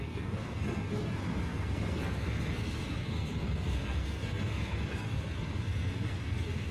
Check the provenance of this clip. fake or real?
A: fake